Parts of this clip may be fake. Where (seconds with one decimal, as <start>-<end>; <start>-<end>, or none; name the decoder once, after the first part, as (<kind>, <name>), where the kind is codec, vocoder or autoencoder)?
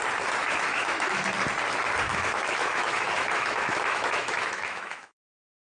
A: 0.4-1.2 (autoencoder, DAC-VAE); 2.1-5.6